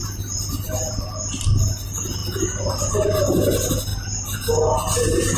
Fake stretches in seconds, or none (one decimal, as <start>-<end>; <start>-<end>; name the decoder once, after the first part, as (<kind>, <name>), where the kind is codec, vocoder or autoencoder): none